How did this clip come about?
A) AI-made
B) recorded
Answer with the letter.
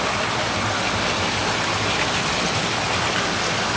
B